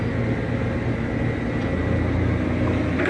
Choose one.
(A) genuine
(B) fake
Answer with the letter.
A